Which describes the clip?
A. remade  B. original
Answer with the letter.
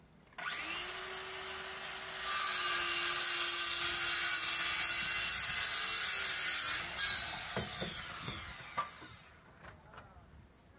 B